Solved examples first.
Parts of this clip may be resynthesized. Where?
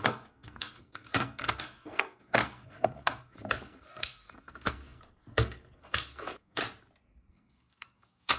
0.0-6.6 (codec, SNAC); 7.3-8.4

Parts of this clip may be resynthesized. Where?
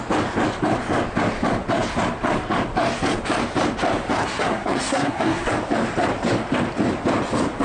4.2-5.5 (codec, SNAC)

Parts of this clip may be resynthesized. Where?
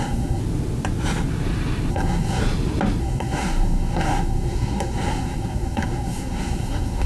0.0-0.4 (codec, SNAC); 1.9-2.4; 3.0-7.1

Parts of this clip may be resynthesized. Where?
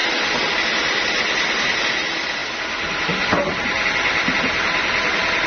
none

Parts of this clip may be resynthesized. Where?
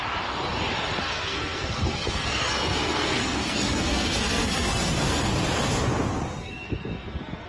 1.0-5.3 (codec, SNAC); 6.4-7.5